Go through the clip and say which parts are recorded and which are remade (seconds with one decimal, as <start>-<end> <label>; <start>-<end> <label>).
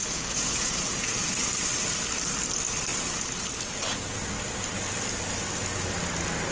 0.0-1.3 remade; 1.3-6.5 recorded